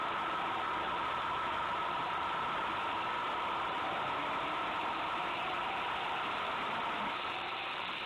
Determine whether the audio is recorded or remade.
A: remade